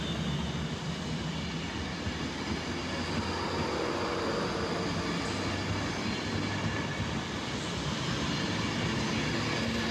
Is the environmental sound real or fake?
real